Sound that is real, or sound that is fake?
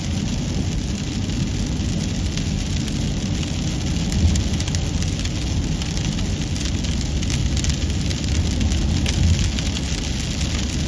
real